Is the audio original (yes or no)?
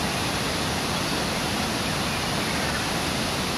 yes